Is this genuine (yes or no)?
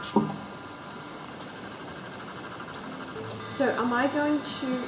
yes